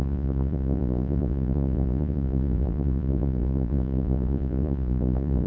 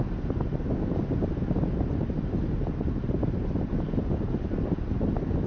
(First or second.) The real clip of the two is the second